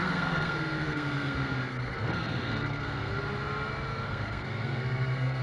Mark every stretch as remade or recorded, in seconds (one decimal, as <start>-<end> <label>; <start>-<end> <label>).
0.0-3.2 remade; 3.2-3.9 recorded; 3.9-5.4 remade

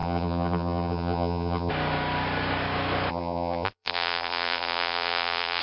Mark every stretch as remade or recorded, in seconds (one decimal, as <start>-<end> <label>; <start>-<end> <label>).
0.0-1.7 remade; 1.7-3.1 recorded; 3.1-5.6 remade